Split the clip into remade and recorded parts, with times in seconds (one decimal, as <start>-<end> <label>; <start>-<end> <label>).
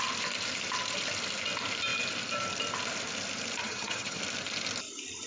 0.0-3.6 recorded; 3.6-4.2 remade; 4.2-5.3 recorded